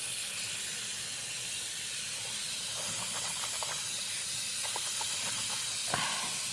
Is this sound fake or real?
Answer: real